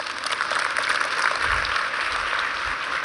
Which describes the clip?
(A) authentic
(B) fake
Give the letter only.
A